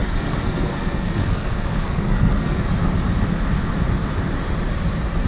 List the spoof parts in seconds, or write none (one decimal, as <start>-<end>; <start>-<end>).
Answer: 0.0-2.6